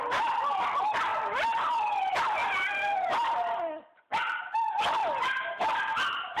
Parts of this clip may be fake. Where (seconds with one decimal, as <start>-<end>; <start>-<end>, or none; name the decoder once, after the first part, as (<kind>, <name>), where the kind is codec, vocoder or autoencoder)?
none